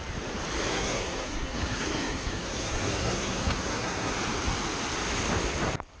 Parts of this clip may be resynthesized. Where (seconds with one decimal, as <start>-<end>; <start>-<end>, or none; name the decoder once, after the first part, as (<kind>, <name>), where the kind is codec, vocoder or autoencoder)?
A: 0.7-4.1 (codec, SNAC)